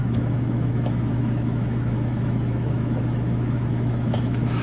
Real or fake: fake